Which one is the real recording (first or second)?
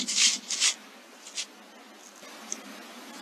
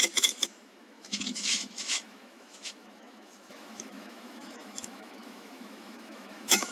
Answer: first